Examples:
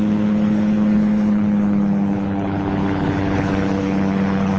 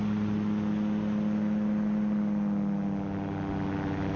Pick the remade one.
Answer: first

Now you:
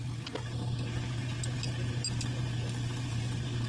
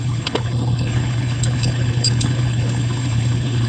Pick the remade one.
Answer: second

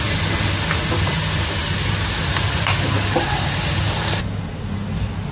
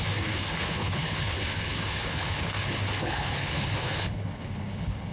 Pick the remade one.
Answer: second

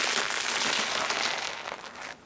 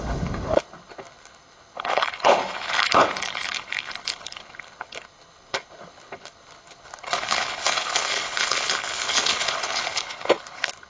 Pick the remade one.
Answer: second